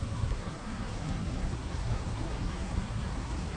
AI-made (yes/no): yes